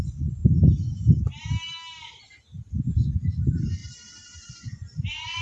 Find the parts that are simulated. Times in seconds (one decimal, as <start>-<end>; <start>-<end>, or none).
0.0-0.4; 2.9-3.8; 4.5-5.4